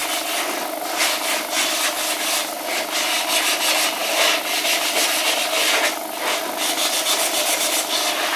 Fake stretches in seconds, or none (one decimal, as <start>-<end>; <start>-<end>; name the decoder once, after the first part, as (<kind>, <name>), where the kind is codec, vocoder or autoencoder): none

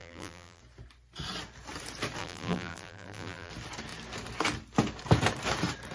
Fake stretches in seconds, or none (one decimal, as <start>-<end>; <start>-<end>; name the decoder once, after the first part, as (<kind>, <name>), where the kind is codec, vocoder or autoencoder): 0.0-0.6 (vocoder, BigVGAN v2); 2.2-3.5